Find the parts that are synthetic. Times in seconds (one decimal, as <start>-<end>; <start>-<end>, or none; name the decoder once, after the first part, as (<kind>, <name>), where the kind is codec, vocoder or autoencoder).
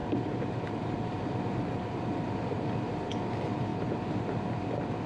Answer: 0.0-3.1 (vocoder, BigVGAN v2); 3.7-5.1